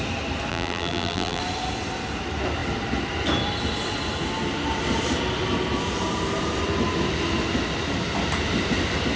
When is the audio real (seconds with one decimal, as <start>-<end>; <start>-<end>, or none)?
0.0-0.5; 1.4-9.2